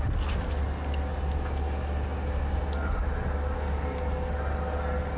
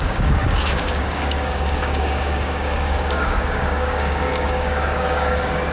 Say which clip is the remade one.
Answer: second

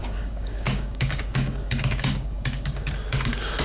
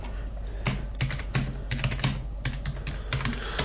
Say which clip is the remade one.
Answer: first